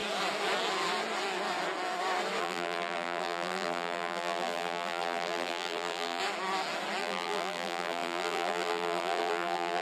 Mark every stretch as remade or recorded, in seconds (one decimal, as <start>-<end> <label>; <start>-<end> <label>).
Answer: 0.0-2.4 recorded; 2.4-6.2 remade; 6.2-7.0 recorded; 7.0-9.8 remade